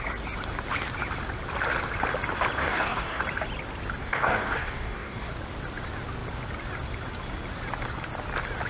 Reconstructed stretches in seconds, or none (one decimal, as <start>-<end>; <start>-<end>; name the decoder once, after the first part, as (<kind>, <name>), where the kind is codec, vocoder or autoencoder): 2.6-3.2 (codec, DAC); 4.0-5.3